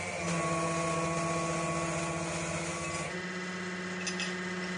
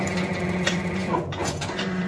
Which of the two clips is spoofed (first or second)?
second